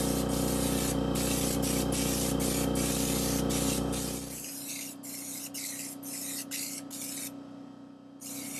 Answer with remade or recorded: recorded